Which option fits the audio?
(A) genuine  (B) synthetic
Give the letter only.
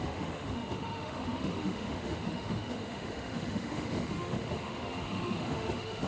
B